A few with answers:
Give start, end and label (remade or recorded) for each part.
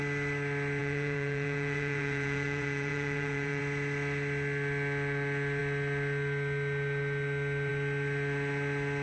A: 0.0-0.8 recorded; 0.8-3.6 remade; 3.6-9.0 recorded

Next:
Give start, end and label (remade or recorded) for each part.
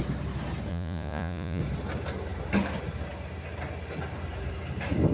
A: 0.0-0.7 recorded; 0.7-1.6 remade; 1.6-5.1 recorded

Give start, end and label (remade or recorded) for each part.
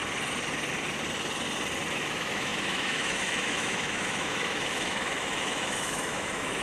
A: 0.0-1.9 recorded; 1.9-6.6 remade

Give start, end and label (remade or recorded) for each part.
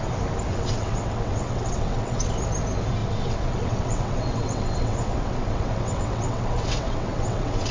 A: 0.0-0.5 recorded; 0.5-2.3 remade; 2.3-3.0 recorded; 3.0-7.7 remade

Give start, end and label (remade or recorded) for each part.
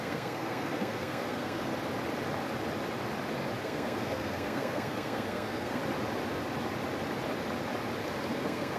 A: 0.0-1.7 remade; 1.7-3.6 recorded; 3.6-5.8 remade; 5.8-8.3 recorded; 8.3-8.8 remade